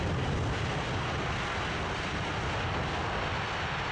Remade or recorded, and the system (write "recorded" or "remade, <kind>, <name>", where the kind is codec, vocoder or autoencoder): recorded